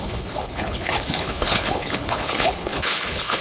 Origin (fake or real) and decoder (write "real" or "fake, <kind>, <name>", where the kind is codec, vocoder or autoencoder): fake, codec, HILCodec